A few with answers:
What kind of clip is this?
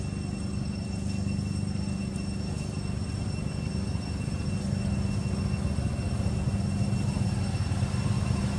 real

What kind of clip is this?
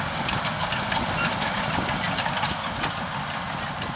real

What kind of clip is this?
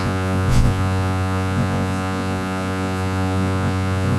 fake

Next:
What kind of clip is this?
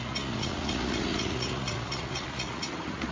fake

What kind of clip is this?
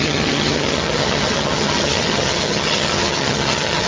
fake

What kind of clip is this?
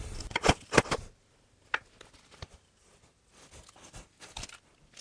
real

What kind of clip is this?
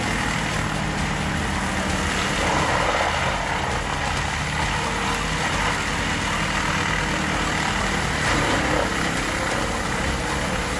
real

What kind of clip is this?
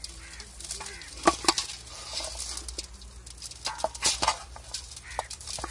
real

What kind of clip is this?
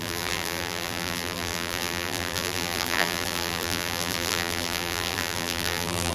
fake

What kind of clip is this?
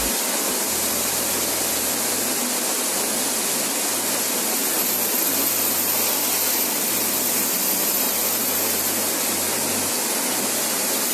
real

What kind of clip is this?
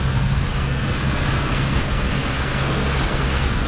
fake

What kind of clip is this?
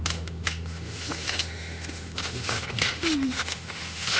fake